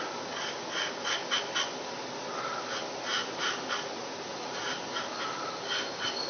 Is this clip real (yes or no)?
yes